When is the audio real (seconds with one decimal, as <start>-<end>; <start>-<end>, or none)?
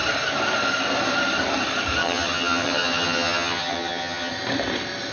0.0-2.0; 4.3-5.1